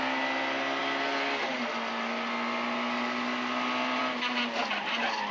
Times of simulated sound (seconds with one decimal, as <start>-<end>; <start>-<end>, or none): none